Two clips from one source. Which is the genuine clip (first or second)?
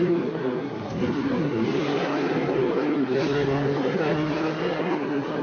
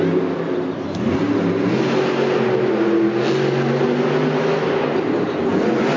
second